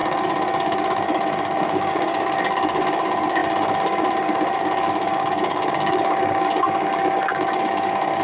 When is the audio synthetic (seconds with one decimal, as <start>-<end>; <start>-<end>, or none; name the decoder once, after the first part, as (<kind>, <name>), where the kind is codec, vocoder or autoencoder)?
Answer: 0.0-8.2 (codec, DAC)